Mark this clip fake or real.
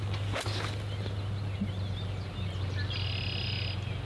real